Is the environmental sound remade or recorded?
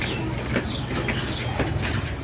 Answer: recorded